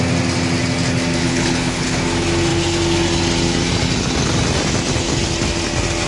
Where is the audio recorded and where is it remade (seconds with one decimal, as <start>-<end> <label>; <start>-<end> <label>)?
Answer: 0.0-1.2 recorded; 1.2-2.0 remade; 2.0-6.1 recorded